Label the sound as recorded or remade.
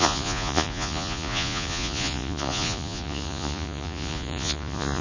remade